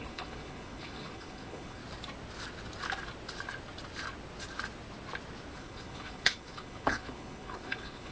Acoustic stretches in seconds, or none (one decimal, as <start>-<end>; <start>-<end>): 1.8-5.5